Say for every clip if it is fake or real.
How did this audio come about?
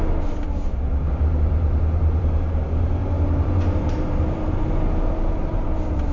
fake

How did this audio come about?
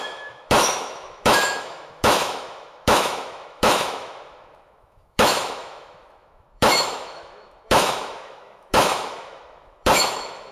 fake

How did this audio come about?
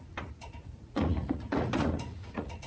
fake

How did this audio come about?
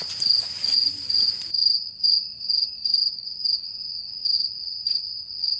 real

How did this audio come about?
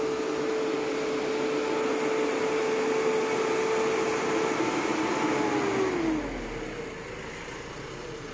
real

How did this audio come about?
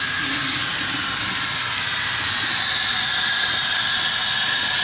real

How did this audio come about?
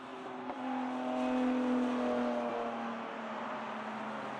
real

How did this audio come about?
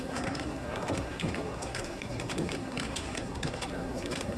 fake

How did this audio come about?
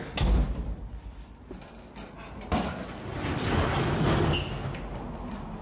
real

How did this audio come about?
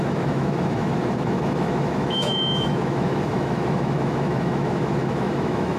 fake